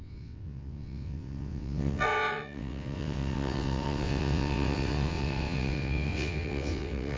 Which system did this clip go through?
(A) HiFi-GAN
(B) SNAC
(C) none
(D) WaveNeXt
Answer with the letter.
D